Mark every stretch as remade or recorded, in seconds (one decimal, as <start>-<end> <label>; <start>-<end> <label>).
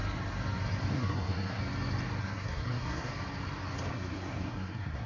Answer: 0.0-0.9 recorded; 0.9-1.6 remade; 1.6-2.2 recorded; 2.2-3.1 remade; 3.1-3.9 recorded; 3.9-5.1 remade